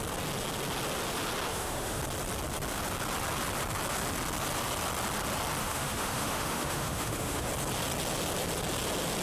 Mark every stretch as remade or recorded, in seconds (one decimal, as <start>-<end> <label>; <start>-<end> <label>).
0.0-1.5 recorded; 1.5-2.0 remade; 2.0-5.6 recorded; 5.6-7.5 remade; 7.5-9.2 recorded